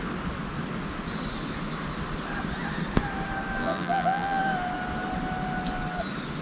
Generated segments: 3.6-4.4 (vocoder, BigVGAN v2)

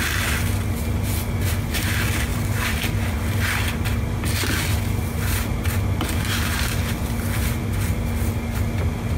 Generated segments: 2.3-3.0 (vocoder, BigVGAN v2)

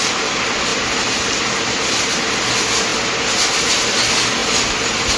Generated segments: 0.7-1.8 (vocoder, BigVGAN v2)

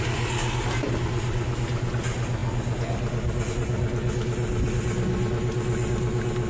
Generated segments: none

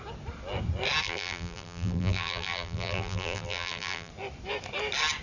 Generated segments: 1.0-4.1 (vocoder, BigVGAN v2)

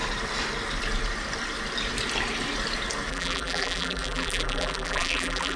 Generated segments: 3.1-5.6 (vocoder, BigVGAN v2)

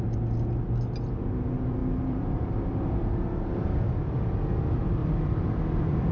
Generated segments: 1.8-2.4 (vocoder, BigVGAN v2); 5.0-6.1